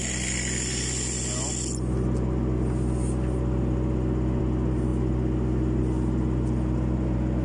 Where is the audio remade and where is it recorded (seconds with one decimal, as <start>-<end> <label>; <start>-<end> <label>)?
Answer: 0.0-7.4 recorded